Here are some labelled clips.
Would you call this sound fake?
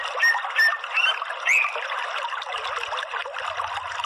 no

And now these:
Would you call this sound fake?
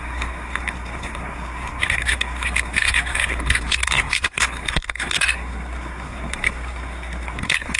yes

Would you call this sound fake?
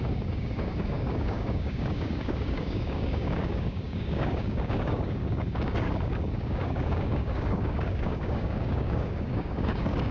yes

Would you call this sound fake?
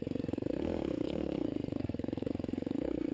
yes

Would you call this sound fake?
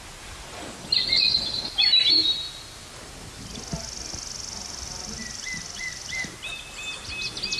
no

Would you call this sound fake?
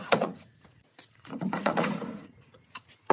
yes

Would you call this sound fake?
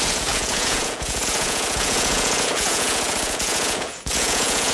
yes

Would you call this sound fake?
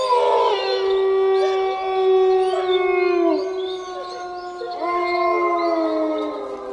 no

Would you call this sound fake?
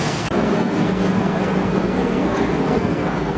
yes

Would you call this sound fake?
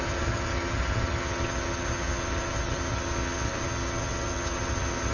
yes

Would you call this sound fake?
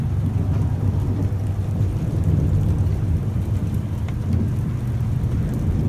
no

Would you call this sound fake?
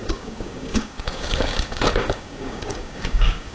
yes